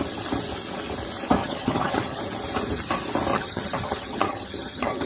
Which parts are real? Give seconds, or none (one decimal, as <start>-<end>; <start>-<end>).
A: 0.0-1.4; 2.2-3.3